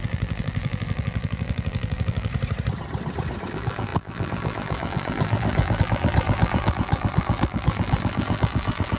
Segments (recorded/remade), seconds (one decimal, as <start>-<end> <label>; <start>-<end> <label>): 0.0-2.3 remade; 2.3-3.5 recorded; 3.5-9.0 remade